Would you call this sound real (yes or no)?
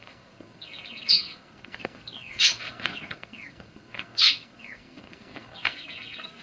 no